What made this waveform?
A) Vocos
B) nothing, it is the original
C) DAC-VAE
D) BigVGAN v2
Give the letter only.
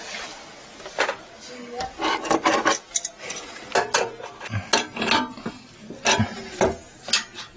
B